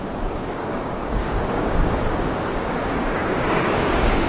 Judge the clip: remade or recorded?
remade